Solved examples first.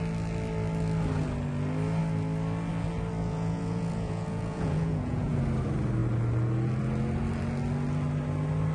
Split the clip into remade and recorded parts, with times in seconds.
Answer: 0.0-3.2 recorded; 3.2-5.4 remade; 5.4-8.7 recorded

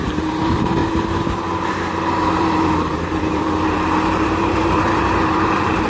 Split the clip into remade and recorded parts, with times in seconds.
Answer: 0.0-0.8 remade; 0.8-1.4 recorded; 1.4-5.9 remade

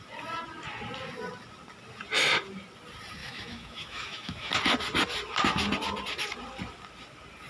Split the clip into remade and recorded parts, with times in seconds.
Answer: 0.0-3.2 recorded; 3.2-4.5 remade; 4.5-7.5 recorded

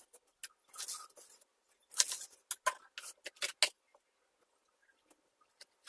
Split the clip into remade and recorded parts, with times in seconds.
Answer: 0.0-5.9 recorded

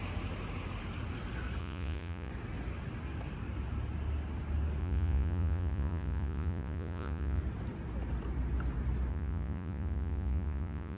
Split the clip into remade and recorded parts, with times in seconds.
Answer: 0.0-1.6 recorded; 1.6-2.3 remade; 2.3-4.8 recorded; 4.8-7.4 remade; 7.4-9.1 recorded; 9.1-11.0 remade

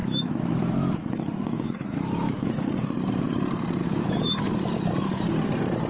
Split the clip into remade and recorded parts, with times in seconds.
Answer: 0.0-2.5 remade; 2.5-3.8 recorded; 3.8-4.5 remade; 4.5-5.9 recorded